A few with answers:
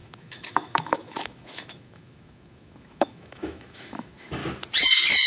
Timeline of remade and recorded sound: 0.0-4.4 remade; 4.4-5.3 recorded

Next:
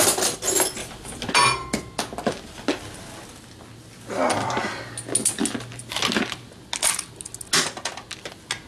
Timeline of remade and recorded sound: 0.0-0.8 recorded; 0.8-1.3 remade; 1.3-8.7 recorded

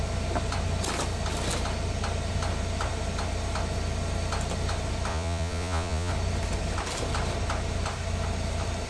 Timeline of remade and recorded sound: 0.0-5.1 recorded; 5.1-6.1 remade; 6.1-8.9 recorded

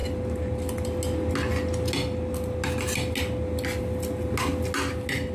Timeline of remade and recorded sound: 0.0-5.3 recorded

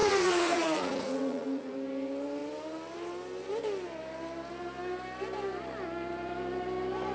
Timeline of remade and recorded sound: 0.0-1.7 remade; 1.7-7.1 recorded